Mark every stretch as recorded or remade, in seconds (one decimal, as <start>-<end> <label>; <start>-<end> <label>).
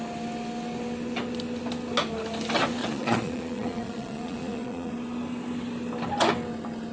0.0-2.8 recorded; 2.8-4.9 remade; 4.9-6.9 recorded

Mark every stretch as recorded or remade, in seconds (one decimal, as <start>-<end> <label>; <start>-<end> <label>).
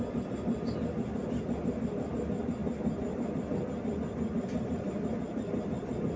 0.0-6.2 recorded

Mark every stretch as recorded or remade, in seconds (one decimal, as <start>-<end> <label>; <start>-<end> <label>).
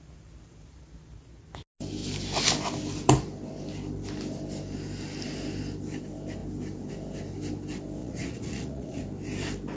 0.0-8.0 recorded; 8.0-9.0 remade; 9.0-9.8 recorded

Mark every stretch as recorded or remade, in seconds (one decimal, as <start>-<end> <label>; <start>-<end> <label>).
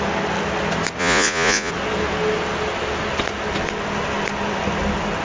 0.0-1.0 recorded; 1.0-1.7 remade; 1.7-5.2 recorded